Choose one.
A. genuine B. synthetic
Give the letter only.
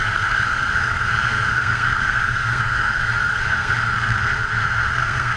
B